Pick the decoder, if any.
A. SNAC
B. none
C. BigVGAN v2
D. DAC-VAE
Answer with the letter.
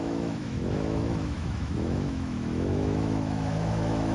D